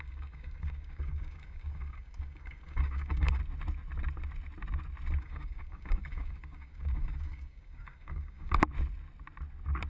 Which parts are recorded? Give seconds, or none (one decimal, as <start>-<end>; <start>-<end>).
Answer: 3.4-5.2; 8.6-9.9